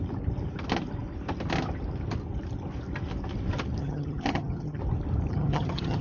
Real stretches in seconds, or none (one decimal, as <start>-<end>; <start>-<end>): 0.0-3.8; 4.8-5.3